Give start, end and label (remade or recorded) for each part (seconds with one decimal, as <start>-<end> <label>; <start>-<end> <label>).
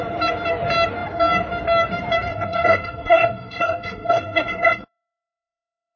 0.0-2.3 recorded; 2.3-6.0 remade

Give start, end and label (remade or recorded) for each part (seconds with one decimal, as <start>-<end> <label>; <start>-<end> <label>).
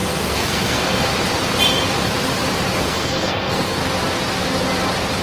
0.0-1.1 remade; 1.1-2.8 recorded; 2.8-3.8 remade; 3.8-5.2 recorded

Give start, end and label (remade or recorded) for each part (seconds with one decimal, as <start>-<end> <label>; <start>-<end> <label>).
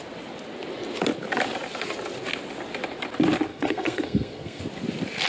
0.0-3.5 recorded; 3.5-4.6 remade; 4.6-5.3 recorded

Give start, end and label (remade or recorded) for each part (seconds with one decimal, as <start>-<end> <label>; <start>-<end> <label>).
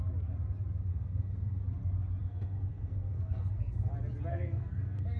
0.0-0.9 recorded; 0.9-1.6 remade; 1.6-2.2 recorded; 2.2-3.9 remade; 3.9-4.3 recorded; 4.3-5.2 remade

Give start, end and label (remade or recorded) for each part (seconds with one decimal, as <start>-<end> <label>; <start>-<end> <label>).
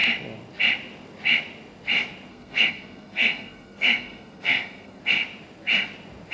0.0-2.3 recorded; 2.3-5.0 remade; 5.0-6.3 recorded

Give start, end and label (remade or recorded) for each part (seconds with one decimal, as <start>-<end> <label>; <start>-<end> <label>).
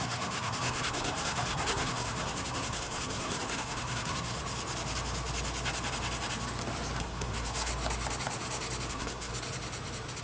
0.0-4.4 remade; 4.4-7.0 recorded; 7.0-7.7 remade; 7.7-8.9 recorded; 8.9-9.3 remade; 9.3-10.2 recorded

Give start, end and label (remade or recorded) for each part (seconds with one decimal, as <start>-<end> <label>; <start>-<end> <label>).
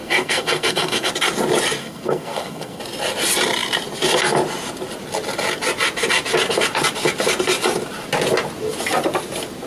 0.0-1.1 remade; 1.1-1.8 recorded; 1.8-2.8 remade; 2.8-9.7 recorded